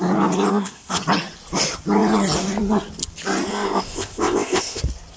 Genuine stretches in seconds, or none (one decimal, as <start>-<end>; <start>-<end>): 0.0-0.5; 1.0-3.5; 4.8-5.2